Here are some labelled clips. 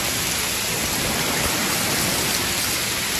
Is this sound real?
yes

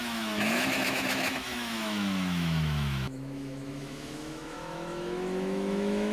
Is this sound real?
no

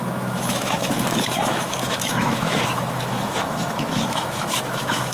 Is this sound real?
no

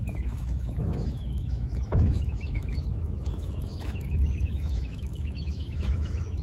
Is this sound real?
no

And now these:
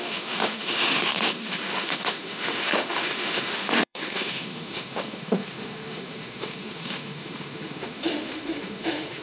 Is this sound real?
no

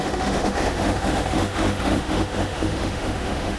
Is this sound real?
no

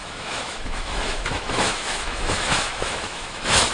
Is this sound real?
no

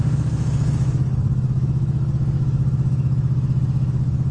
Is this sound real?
no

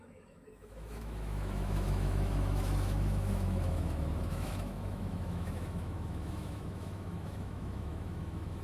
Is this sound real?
no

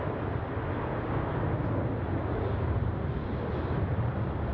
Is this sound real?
yes